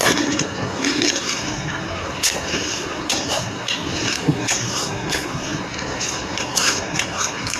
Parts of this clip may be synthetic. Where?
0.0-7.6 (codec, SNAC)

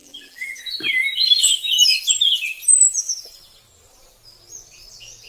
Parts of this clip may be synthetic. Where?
0.0-0.6 (vocoder, BigVGAN v2)